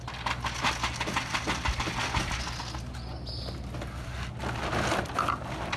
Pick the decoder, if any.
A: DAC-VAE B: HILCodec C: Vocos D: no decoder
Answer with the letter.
D